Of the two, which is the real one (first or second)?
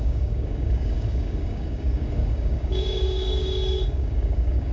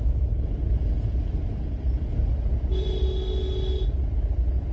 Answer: second